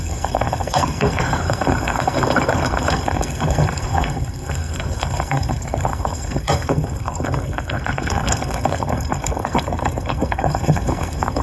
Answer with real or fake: fake